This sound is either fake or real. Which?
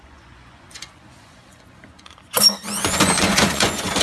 fake